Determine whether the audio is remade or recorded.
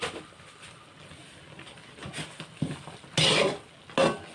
recorded